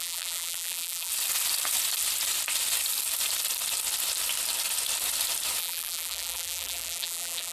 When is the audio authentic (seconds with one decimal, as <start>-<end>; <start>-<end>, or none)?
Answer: 1.1-5.6